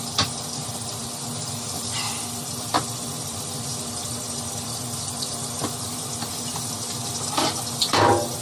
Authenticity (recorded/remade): remade